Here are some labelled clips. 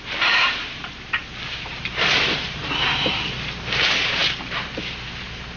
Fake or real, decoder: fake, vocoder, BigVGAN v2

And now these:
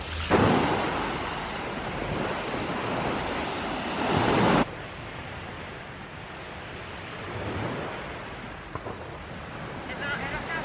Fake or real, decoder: real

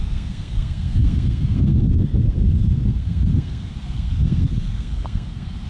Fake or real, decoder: fake, codec, SNAC